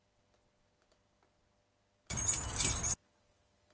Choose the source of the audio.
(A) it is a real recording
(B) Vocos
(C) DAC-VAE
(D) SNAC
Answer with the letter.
A